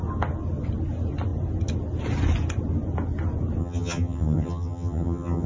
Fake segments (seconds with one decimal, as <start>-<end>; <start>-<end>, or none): 3.6-5.5

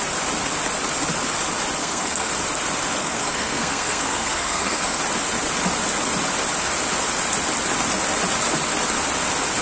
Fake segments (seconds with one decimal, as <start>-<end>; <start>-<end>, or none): 1.8-2.3; 3.0-5.0

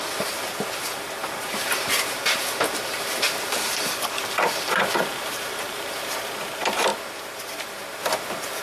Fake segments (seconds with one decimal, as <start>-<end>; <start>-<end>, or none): 1.2-6.0